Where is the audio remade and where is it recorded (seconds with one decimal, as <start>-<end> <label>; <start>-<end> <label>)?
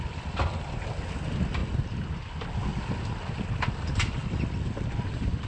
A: 0.0-5.5 recorded